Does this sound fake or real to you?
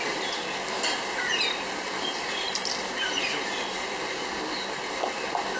real